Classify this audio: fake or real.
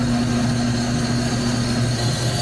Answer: real